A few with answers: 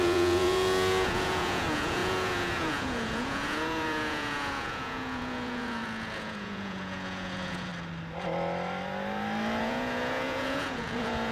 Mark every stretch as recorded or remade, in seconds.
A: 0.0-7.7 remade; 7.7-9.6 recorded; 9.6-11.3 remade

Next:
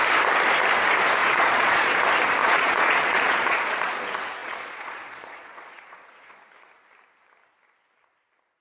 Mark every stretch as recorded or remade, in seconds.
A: 0.0-1.2 recorded; 1.2-2.0 remade; 2.0-2.4 recorded; 2.4-3.9 remade; 3.9-4.4 recorded; 4.4-6.5 remade; 6.5-8.6 recorded